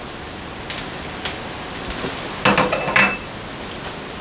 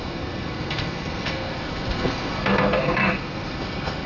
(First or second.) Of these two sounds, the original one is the first